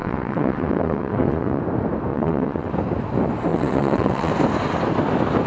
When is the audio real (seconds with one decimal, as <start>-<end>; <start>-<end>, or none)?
1.6-2.1; 2.7-3.5; 4.3-5.5